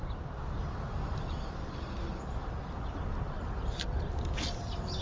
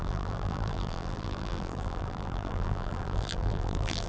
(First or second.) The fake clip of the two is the second